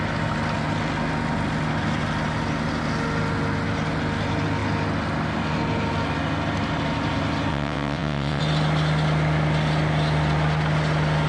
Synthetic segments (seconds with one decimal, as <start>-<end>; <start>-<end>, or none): 7.5-8.4